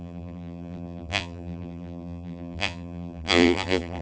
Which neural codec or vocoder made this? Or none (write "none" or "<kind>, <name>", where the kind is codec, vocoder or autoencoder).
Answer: vocoder, BigVGAN v2